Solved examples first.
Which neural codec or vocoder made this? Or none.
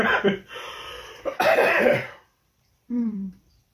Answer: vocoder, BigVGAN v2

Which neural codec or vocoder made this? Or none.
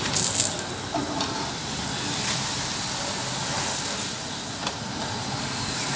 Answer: none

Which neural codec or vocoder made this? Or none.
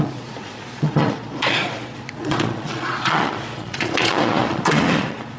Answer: vocoder, Vocos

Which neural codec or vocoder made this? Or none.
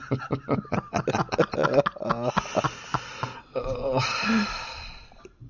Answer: none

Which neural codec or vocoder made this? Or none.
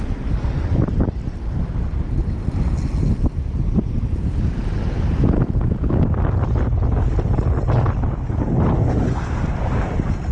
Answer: none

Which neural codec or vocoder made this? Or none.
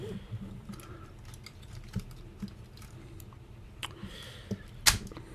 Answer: none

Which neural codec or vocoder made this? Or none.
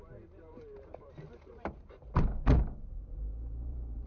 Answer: vocoder, BigVGAN v2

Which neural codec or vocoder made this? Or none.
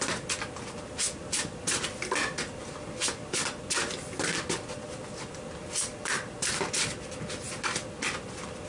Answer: none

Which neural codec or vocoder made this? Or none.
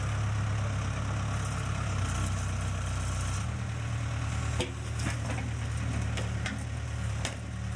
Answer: none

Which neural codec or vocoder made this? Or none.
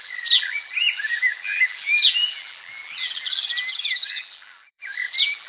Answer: vocoder, BigVGAN v2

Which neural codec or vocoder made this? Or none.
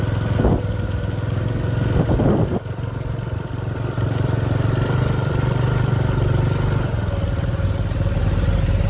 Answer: none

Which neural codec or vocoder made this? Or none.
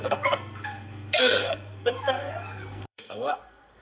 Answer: codec, SNAC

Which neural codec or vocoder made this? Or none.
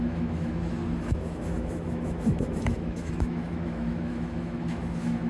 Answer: autoencoder, DAC-VAE